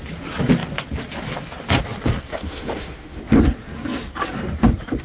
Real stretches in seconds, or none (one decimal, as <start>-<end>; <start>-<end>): 0.0-2.3; 3.2-5.0